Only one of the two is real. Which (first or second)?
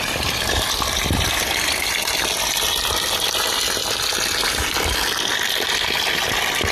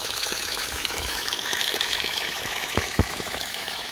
first